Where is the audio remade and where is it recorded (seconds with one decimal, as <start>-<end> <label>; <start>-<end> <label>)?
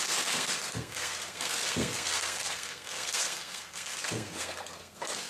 0.0-5.3 remade